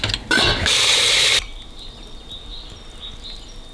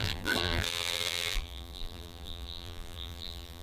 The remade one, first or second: second